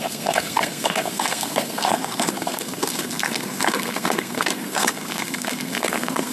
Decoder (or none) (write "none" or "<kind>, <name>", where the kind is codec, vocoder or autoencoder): codec, SNAC